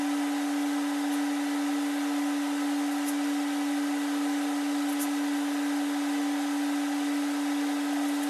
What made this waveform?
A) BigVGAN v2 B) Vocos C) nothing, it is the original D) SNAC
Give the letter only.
C